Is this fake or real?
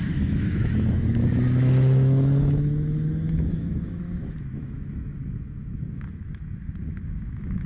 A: fake